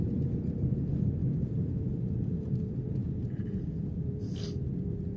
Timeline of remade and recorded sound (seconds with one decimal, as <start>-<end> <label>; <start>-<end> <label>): 0.0-1.2 recorded; 1.2-2.5 remade; 2.5-3.0 recorded; 3.0-4.2 remade; 4.2-5.2 recorded